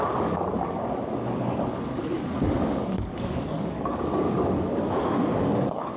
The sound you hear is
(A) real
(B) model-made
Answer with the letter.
B